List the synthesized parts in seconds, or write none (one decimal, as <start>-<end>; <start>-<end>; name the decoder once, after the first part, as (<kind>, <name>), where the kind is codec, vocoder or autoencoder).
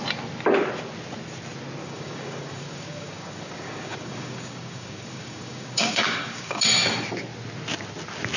1.8-6.6 (codec, DAC)